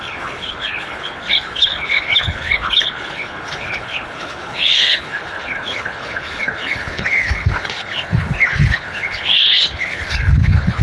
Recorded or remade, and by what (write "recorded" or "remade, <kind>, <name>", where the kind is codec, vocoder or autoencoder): remade, codec, HILCodec